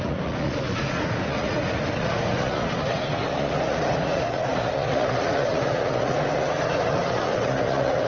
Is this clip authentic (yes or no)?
no